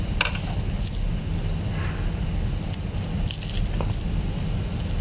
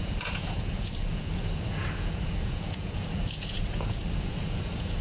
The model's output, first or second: second